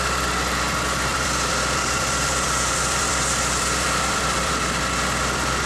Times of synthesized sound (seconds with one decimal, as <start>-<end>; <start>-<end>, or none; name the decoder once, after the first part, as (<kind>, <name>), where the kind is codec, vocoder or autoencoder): 1.1-4.5 (vocoder, BigVGAN v2)